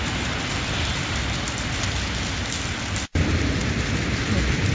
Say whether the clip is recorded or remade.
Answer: recorded